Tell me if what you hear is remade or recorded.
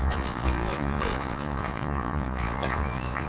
remade